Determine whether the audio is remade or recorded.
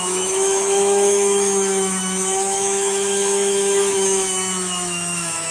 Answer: remade